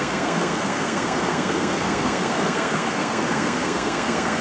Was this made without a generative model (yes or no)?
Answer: no